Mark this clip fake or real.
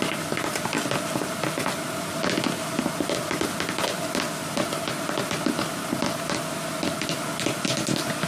real